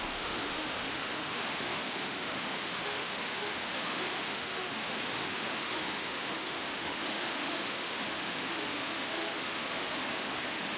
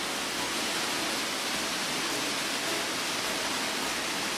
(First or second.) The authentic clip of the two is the second